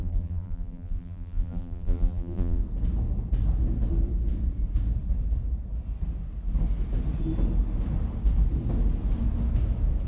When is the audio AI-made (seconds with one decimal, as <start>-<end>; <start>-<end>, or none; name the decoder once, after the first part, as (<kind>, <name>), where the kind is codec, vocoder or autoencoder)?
0.0-2.6 (vocoder, BigVGAN v2)